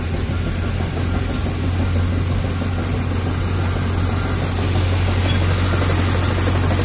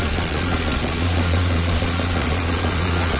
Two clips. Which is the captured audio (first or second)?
first